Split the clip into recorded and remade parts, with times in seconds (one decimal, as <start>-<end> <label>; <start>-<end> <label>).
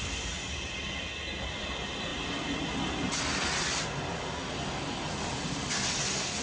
0.0-6.4 recorded